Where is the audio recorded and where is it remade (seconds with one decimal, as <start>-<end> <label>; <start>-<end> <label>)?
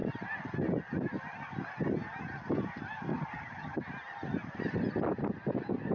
0.0-3.1 recorded; 3.1-3.8 remade; 3.8-5.9 recorded